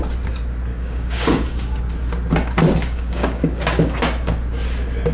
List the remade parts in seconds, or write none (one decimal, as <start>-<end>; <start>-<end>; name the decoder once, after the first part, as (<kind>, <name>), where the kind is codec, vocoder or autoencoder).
0.7-1.8 (codec, DAC); 2.8-4.0